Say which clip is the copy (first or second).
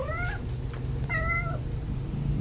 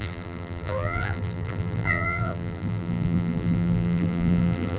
second